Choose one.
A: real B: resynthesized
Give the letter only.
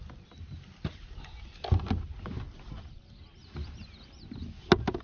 A